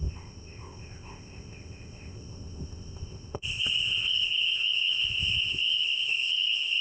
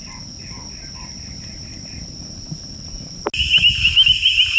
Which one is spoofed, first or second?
first